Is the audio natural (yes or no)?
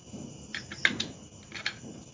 yes